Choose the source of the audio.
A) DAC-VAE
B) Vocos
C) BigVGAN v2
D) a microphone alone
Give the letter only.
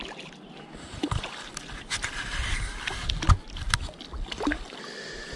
D